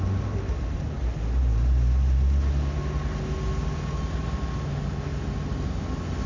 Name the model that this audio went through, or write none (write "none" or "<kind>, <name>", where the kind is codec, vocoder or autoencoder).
none